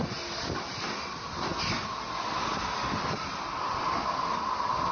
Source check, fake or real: real